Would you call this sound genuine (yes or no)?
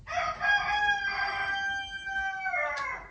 yes